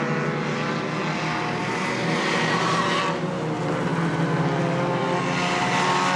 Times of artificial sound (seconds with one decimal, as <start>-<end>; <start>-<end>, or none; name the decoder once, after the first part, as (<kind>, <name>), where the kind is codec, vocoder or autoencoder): 1.6-3.0 (vocoder, BigVGAN v2)